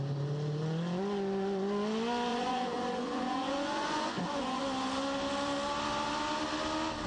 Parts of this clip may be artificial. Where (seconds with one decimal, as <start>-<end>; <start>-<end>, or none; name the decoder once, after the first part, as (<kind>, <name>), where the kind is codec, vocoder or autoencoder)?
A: 2.3-4.6 (vocoder, Vocos)